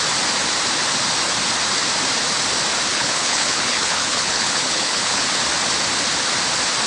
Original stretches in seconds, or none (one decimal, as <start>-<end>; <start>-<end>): 0.0-2.9; 5.2-6.9